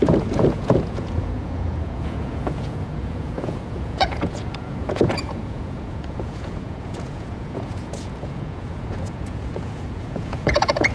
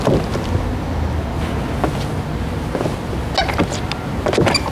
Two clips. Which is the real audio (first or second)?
second